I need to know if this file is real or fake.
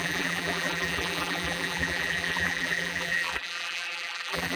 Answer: fake